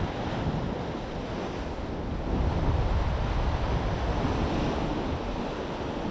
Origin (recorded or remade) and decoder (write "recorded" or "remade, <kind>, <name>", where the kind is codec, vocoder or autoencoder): recorded